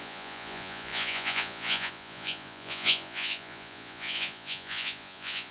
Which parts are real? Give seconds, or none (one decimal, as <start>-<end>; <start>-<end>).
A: none